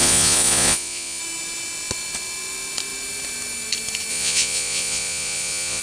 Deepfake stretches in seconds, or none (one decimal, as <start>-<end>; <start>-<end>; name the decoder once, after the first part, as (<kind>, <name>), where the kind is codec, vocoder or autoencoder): 0.0-1.2 (vocoder, Vocos); 4.1-5.8